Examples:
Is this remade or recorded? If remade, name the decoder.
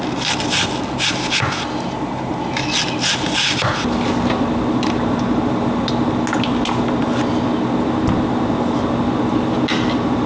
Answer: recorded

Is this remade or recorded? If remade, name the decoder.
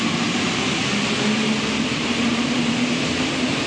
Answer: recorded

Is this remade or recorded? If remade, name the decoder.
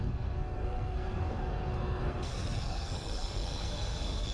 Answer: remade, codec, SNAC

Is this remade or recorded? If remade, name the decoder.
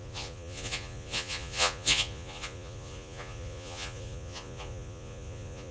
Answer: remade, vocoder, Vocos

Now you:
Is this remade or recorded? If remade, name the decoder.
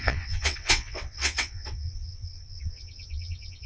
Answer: remade, vocoder, WaveNeXt